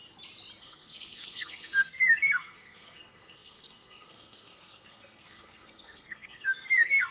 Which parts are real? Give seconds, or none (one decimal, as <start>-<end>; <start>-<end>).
0.0-0.6